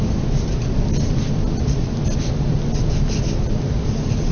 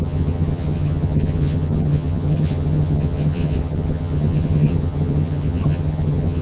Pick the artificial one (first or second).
second